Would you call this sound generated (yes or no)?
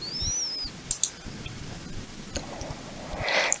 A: no